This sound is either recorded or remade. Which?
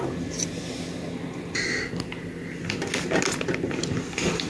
recorded